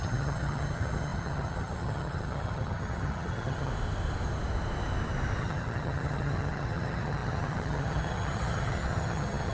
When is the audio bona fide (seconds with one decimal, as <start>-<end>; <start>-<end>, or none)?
3.7-5.4